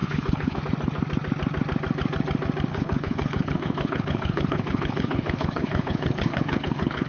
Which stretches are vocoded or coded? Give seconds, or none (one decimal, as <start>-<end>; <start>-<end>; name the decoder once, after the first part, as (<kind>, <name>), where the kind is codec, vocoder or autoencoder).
0.0-0.6 (codec, HILCodec); 2.7-7.1

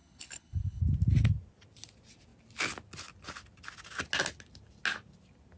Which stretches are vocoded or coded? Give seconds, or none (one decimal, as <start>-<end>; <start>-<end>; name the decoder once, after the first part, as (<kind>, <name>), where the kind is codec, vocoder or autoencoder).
0.0-0.8 (codec, HILCodec)

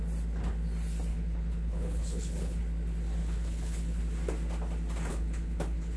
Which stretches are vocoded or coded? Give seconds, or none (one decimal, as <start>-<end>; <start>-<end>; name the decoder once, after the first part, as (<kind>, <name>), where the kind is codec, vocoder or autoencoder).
1.1-2.6 (codec, HILCodec); 3.2-4.0; 5.1-6.0

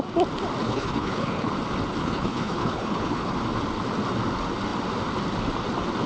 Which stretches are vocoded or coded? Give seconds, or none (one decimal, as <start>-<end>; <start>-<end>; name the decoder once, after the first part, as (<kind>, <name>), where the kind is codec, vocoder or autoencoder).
0.6-1.5 (codec, HILCodec); 2.0-3.3

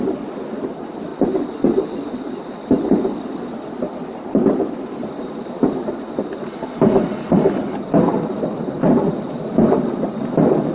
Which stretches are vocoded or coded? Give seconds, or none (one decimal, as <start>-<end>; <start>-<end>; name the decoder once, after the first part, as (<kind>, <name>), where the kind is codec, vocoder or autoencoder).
none

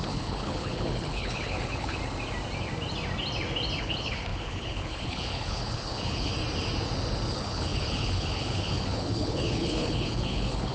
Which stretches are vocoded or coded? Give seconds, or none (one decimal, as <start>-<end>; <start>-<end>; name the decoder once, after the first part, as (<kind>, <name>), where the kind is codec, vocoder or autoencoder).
0.0-2.0 (codec, HILCodec); 3.8-6.3; 7.3-10.7

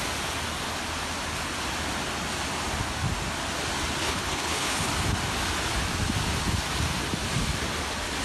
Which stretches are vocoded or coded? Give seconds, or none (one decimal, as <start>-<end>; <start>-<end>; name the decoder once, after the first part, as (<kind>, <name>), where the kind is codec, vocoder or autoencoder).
4.0-4.9 (codec, HILCodec)

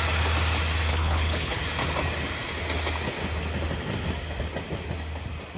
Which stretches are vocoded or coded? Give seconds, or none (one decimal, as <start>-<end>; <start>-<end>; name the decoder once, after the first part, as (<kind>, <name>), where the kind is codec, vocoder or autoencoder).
0.9-1.6 (codec, HILCodec)